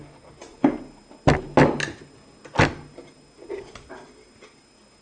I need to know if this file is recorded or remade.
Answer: recorded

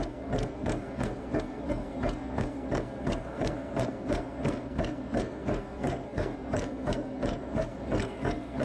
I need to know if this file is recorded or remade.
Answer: remade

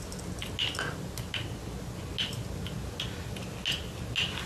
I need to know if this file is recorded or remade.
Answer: recorded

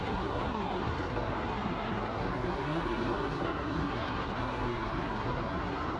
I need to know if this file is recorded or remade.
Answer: remade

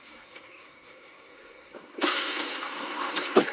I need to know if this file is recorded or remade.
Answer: remade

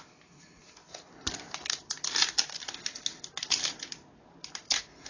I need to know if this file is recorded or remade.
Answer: recorded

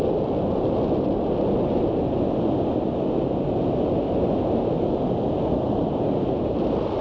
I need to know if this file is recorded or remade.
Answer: recorded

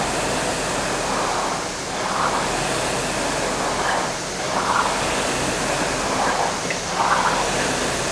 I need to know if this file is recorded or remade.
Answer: recorded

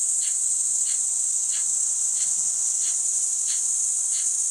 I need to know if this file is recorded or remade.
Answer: recorded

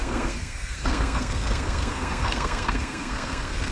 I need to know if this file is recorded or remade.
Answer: remade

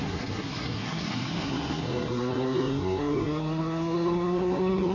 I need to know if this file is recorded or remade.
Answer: remade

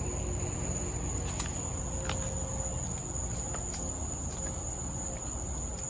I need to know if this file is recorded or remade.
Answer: recorded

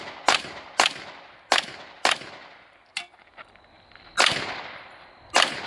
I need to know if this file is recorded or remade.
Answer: recorded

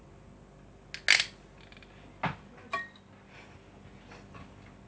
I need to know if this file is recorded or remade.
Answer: recorded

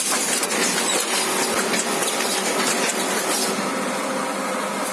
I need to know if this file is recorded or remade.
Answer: recorded